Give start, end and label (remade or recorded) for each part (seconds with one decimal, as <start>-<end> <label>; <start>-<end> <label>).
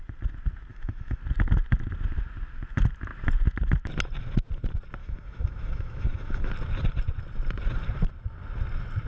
0.0-0.7 recorded; 0.7-1.2 remade; 1.2-5.0 recorded; 5.0-6.5 remade; 6.5-9.1 recorded